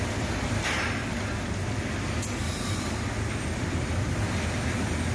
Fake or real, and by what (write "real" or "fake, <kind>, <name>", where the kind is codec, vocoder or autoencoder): real